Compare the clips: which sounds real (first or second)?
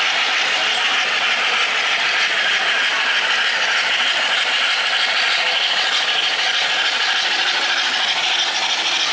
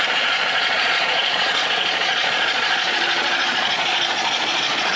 first